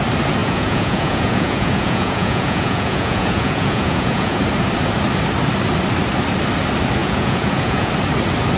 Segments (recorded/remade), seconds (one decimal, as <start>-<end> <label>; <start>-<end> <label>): 0.0-0.4 recorded; 0.4-4.4 remade; 4.4-7.0 recorded; 7.0-7.9 remade; 7.9-8.6 recorded

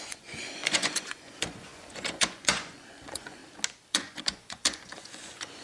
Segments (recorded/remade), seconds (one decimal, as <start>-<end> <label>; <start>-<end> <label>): 0.0-3.4 remade; 3.4-3.9 recorded; 3.9-5.6 remade